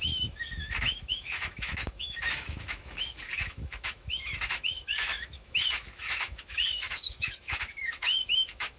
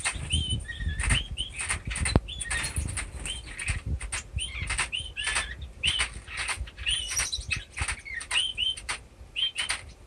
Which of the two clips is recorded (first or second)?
second